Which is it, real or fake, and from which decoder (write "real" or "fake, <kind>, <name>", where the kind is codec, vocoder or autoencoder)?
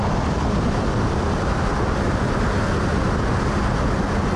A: real